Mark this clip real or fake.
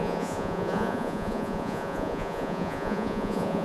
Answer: fake